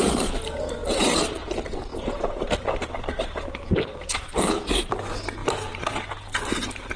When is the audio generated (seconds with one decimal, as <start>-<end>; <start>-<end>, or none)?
0.8-1.5; 1.9-4.4; 5.4-6.0